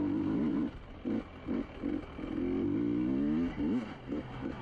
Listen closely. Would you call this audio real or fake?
real